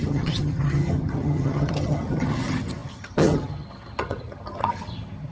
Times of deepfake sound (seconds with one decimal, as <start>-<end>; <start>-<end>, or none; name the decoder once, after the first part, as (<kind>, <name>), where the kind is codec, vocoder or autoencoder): 0.0-5.3 (vocoder, HiFi-GAN)